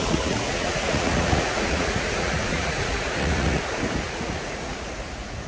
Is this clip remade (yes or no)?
yes